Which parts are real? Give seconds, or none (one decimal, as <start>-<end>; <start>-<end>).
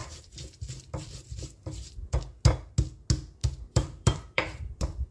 2.2-3.4